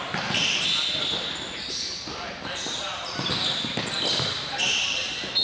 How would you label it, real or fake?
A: real